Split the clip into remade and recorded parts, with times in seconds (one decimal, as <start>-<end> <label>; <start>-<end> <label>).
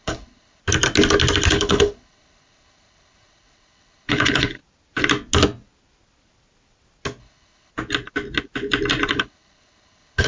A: 0.0-0.6 remade; 0.6-1.5 recorded; 1.5-4.6 remade; 4.6-7.2 recorded; 7.2-7.7 remade; 7.7-9.1 recorded; 9.1-10.3 remade